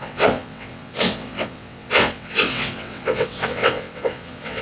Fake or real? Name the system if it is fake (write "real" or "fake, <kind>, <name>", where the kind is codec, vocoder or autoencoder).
fake, vocoder, WaveNeXt